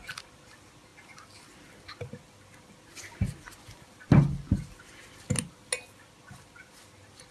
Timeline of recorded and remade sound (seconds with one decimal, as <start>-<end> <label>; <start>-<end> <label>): 0.0-7.3 recorded